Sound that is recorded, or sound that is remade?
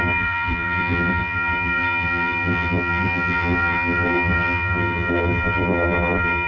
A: remade